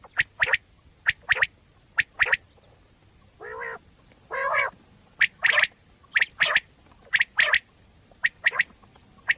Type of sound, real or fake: real